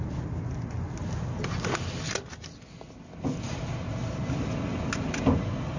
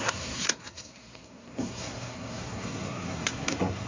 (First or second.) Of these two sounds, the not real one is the second